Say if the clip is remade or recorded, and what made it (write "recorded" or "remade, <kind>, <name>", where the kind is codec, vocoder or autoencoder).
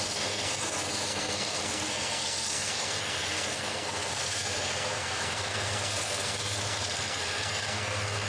remade, codec, SNAC